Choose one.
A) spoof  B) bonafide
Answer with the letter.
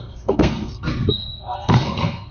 A